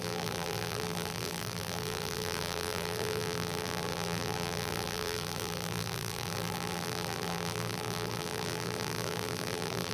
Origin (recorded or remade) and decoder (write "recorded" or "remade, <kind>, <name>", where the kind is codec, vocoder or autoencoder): remade, vocoder, BigVGAN v2